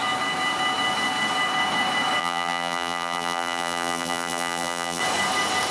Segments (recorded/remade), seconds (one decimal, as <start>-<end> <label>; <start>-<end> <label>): 0.0-2.2 recorded; 2.2-5.0 remade; 5.0-5.7 recorded